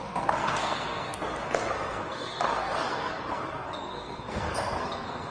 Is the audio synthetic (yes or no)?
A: yes